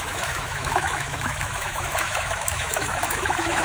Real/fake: fake